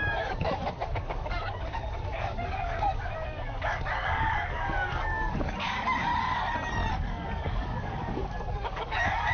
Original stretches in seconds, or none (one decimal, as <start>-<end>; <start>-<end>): 6.1-6.9